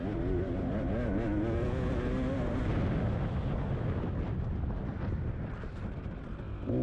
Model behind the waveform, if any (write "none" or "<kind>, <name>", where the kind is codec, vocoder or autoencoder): none